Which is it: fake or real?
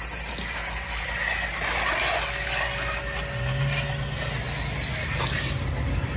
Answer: real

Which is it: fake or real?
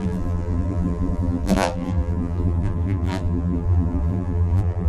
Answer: fake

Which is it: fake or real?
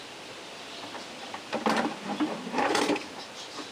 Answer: real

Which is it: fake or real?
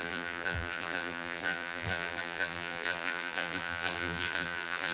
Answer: fake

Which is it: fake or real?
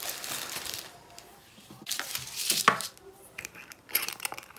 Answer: fake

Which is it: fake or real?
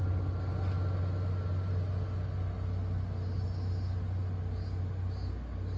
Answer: real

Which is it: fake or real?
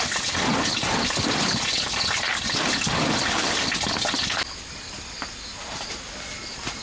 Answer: real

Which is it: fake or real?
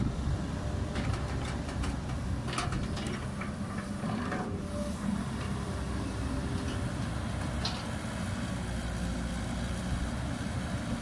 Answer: fake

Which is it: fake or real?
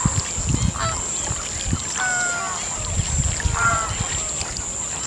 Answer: real